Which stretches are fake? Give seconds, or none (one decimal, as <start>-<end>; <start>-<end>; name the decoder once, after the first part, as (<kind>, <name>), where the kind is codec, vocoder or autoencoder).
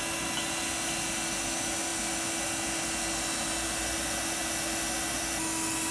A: none